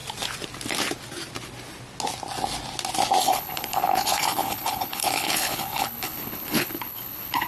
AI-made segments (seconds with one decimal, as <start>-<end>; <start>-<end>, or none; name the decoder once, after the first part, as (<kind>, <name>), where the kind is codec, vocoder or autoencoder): 3.2-7.5 (codec, HILCodec)